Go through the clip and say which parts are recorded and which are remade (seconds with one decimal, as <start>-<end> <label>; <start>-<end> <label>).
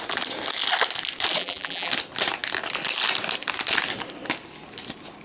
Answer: 0.0-1.4 recorded; 1.4-1.9 remade; 1.9-5.2 recorded